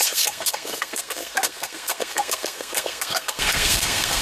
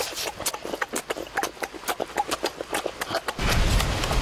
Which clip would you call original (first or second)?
second